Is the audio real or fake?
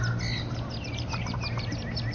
real